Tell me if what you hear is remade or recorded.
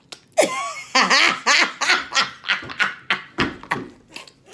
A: recorded